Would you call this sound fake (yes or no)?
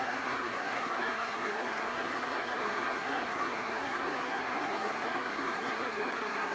yes